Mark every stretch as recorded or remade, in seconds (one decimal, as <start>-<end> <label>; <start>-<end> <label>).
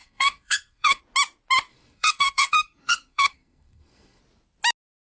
0.0-1.0 remade; 1.0-1.7 recorded; 1.7-4.2 remade; 4.2-5.1 recorded